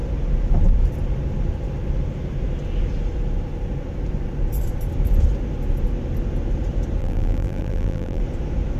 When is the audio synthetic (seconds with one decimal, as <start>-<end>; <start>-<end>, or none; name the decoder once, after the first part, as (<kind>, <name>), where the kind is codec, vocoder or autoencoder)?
7.0-8.2 (vocoder, BigVGAN v2)

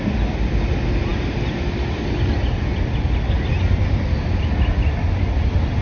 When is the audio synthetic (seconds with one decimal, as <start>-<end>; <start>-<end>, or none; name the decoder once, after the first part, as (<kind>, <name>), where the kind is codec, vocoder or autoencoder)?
none

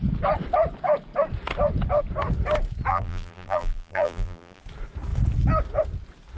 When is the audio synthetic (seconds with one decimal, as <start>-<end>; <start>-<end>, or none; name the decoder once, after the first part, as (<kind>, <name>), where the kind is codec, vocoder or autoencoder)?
2.9-4.6 (vocoder, BigVGAN v2)

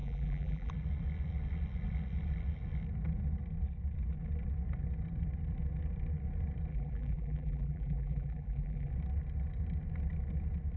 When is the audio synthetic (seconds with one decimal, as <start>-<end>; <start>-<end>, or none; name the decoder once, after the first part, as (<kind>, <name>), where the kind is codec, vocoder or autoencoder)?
0.0-0.7 (vocoder, BigVGAN v2); 6.7-8.9

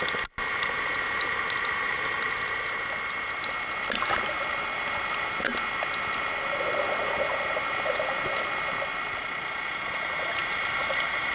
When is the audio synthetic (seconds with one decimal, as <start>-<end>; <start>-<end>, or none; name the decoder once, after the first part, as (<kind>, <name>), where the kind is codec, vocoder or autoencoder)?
10.4-11.3 (vocoder, BigVGAN v2)

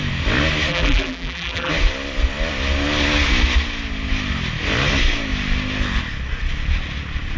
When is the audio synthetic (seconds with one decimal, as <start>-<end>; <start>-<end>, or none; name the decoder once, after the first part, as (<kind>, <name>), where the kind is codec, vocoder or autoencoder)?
0.7-1.7 (vocoder, BigVGAN v2)

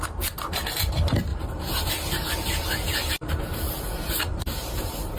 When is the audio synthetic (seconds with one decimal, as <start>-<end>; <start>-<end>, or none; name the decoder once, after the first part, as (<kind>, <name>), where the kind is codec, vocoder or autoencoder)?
1.3-1.9 (vocoder, BigVGAN v2)

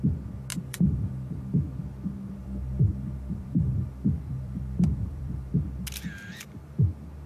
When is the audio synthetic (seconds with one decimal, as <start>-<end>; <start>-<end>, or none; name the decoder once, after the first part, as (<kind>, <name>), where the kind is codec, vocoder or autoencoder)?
0.5-1.5 (vocoder, BigVGAN v2); 2.4-5.5